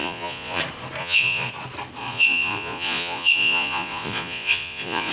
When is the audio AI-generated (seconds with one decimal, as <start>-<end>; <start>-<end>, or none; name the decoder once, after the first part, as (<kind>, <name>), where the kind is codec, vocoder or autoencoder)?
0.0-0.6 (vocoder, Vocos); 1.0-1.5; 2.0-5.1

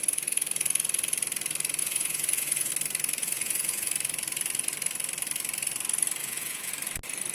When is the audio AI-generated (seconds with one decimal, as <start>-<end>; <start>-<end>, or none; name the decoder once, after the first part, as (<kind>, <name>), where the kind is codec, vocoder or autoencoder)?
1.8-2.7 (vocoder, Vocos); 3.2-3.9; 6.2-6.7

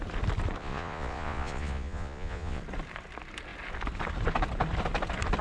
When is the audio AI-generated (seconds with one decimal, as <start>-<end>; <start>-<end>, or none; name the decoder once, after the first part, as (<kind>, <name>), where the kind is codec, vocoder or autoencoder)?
0.6-2.6 (vocoder, Vocos)